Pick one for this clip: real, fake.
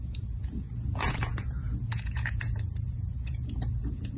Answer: fake